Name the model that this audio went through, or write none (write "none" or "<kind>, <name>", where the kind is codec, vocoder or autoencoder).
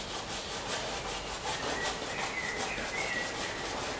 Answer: none